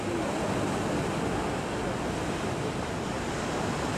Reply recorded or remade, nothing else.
recorded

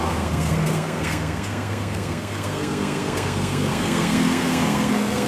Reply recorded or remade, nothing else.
remade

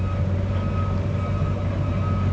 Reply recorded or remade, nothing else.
recorded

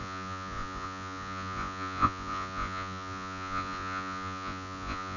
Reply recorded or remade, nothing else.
remade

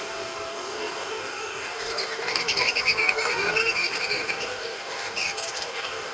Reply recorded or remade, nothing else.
remade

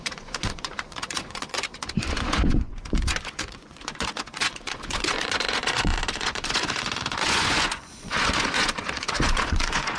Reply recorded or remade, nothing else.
remade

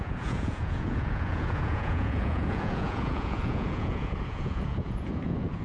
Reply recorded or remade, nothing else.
remade